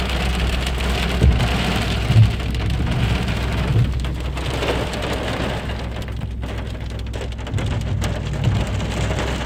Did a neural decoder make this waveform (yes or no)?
no